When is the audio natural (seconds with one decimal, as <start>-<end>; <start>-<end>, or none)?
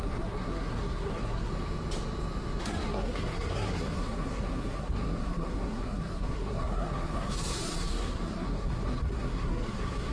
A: 1.5-2.6